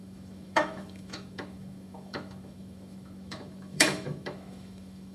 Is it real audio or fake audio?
fake